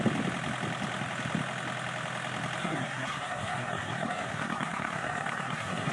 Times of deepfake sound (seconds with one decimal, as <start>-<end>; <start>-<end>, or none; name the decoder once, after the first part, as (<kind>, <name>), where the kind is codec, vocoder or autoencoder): 2.6-5.9 (codec, SNAC)